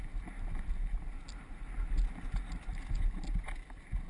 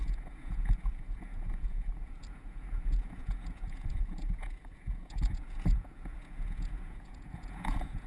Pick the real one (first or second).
first